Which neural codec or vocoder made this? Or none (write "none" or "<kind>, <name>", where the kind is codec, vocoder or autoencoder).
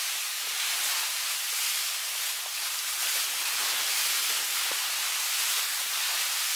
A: none